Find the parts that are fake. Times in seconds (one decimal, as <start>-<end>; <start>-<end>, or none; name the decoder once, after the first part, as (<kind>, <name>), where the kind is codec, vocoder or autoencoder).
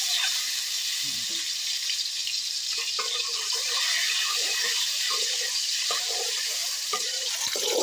0.0-7.8 (vocoder, BigVGAN v2)